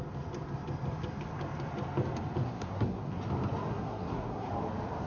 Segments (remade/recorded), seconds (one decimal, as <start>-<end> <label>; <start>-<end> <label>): 0.0-2.4 recorded; 2.4-3.2 remade; 3.2-3.7 recorded; 3.7-4.5 remade; 4.5-5.1 recorded